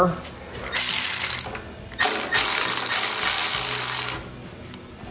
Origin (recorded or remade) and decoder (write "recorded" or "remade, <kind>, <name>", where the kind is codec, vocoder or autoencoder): recorded